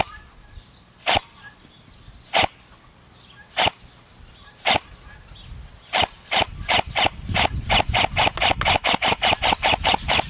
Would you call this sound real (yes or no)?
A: yes